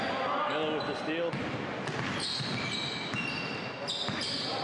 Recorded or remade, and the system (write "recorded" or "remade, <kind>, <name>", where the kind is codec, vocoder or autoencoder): recorded